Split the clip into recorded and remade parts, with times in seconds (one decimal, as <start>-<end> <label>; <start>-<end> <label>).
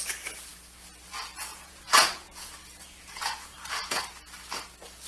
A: 0.0-1.5 recorded; 1.5-4.0 remade; 4.0-5.1 recorded